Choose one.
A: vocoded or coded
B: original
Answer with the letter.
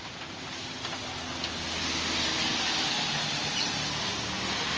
B